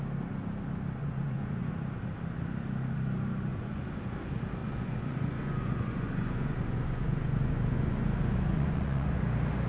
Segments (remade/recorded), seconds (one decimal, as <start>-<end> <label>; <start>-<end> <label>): 0.0-1.0 recorded; 1.0-1.7 remade; 1.7-3.5 recorded; 3.5-4.0 remade; 4.0-4.6 recorded; 4.6-9.2 remade; 9.2-9.7 recorded